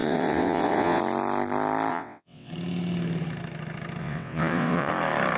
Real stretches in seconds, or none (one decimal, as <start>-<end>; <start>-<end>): 1.0-1.9; 2.5-4.0; 4.9-5.4